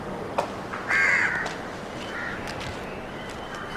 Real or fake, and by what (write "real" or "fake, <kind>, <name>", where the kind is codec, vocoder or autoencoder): real